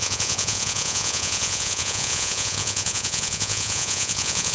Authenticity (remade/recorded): remade